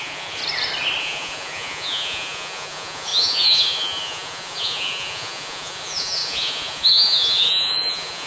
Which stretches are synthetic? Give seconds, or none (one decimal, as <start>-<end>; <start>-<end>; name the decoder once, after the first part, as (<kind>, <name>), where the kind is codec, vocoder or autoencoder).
0.0-0.4 (vocoder, Vocos); 1.0-8.3

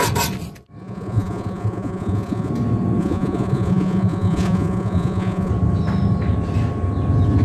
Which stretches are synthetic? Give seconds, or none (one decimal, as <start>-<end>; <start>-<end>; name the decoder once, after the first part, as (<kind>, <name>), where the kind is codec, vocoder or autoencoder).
0.8-2.5 (vocoder, Vocos); 3.0-5.5

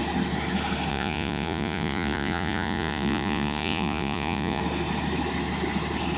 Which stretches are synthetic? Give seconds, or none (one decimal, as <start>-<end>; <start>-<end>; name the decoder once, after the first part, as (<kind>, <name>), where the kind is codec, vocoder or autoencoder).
0.9-4.6 (vocoder, Vocos)

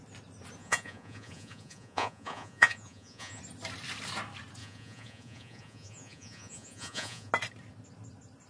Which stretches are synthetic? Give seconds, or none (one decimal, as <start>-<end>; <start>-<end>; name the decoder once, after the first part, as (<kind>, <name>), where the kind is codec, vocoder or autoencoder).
0.6-3.4 (vocoder, Vocos); 4.6-7.3

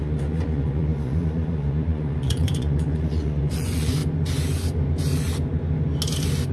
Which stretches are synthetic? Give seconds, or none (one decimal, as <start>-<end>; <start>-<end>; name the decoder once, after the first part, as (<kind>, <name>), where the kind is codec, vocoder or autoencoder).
0.0-4.0 (vocoder, Vocos)

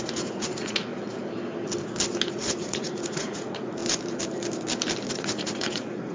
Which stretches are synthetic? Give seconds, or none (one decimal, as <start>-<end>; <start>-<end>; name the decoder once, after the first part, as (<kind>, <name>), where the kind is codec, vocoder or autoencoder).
0.0-0.9 (vocoder, Vocos); 2.3-3.8; 5.1-6.1

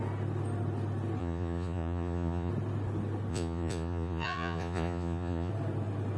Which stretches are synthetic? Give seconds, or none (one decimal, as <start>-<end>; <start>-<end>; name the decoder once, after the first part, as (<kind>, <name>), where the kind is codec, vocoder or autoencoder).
1.2-2.5 (vocoder, Vocos); 3.3-5.5